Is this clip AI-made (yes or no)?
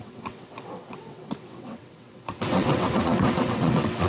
yes